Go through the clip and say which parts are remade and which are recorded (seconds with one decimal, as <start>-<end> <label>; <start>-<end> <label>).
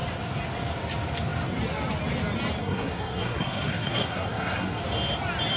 0.0-2.6 recorded; 2.6-4.8 remade; 4.8-5.6 recorded